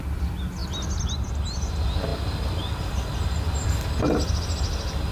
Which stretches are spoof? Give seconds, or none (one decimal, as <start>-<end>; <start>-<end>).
none